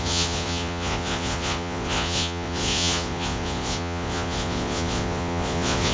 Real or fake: fake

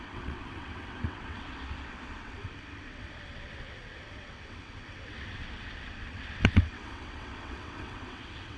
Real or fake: fake